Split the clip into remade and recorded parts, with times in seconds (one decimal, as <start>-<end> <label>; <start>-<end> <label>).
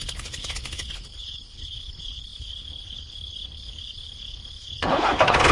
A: 0.0-5.5 remade